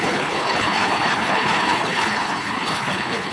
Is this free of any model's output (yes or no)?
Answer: no